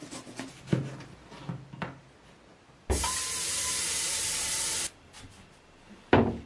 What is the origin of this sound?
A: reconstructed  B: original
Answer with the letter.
B